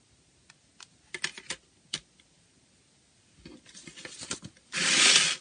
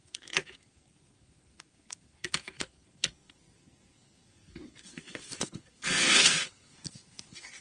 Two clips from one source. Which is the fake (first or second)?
second